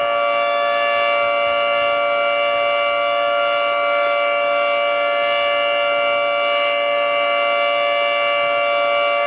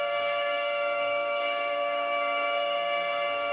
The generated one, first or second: second